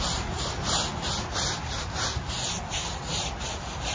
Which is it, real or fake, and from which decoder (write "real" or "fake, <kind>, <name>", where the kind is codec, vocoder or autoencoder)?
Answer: real